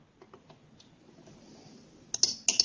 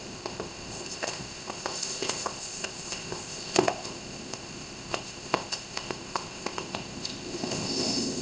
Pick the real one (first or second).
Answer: first